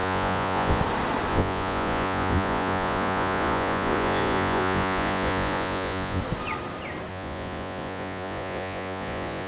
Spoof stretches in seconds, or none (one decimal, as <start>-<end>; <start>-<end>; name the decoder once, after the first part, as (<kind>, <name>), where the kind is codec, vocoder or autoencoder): 0.0-0.8 (vocoder, Vocos); 1.3-6.2; 7.1-9.5